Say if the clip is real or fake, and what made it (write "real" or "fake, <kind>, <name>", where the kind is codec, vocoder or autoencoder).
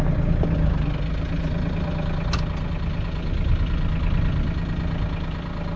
real